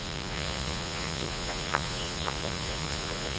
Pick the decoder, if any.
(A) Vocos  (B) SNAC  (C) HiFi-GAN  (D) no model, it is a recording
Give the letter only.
A